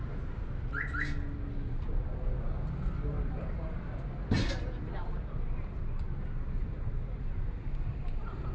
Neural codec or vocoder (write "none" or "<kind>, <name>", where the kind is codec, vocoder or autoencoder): none